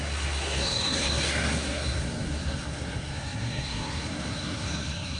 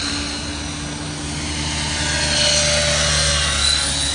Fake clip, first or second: first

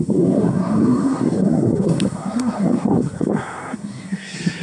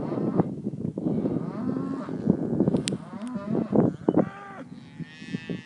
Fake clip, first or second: first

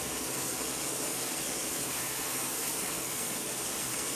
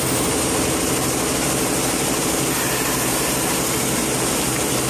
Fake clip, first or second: first